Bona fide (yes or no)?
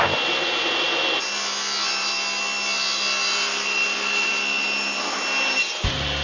yes